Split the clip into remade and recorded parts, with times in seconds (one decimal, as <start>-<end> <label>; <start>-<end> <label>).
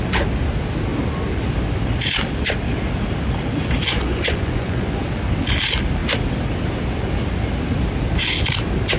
0.0-3.8 recorded; 3.8-5.0 remade; 5.0-9.0 recorded